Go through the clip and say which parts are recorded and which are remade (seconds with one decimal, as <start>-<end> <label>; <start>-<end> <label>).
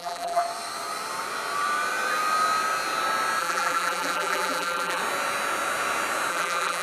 0.0-0.4 remade; 0.4-3.4 recorded; 3.4-5.0 remade; 5.0-6.3 recorded; 6.3-6.8 remade